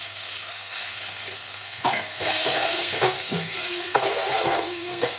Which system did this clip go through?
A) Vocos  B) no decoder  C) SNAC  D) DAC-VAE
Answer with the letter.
C